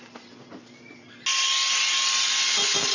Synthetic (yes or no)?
no